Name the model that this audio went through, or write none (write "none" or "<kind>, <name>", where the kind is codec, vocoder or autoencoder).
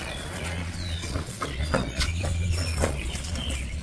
vocoder, Vocos